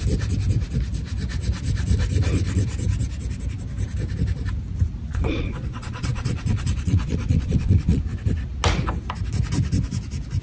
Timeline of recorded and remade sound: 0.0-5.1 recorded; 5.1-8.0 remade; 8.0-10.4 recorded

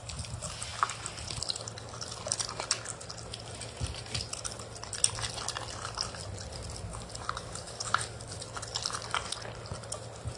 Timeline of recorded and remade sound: 0.0-6.9 recorded; 6.9-8.4 remade; 8.4-10.4 recorded

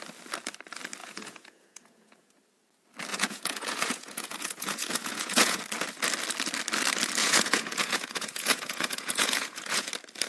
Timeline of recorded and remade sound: 0.0-1.0 recorded; 1.0-2.3 remade; 2.3-3.1 recorded; 3.1-5.6 remade; 5.6-7.2 recorded; 7.2-9.9 remade; 9.9-10.3 recorded

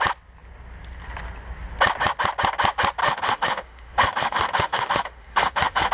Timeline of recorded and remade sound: 0.0-3.0 recorded; 3.0-5.9 remade

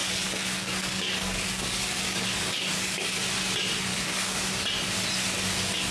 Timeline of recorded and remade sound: 0.0-3.2 remade; 3.2-3.9 recorded; 3.9-4.5 remade; 4.5-5.9 recorded

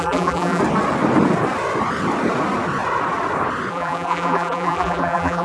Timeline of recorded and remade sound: 0.0-0.6 remade; 0.6-3.7 recorded; 3.7-5.4 remade

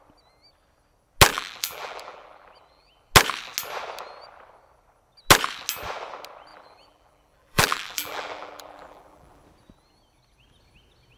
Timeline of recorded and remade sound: 0.0-1.3 recorded; 1.3-3.0 remade; 3.0-6.5 recorded; 6.5-9.4 remade; 9.4-11.2 recorded